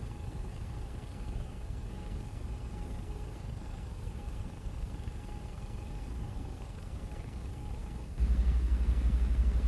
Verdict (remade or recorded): remade